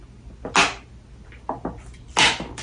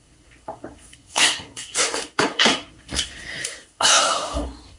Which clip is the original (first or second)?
first